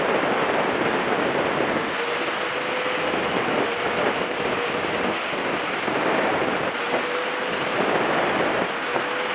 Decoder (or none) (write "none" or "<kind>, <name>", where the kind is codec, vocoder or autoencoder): none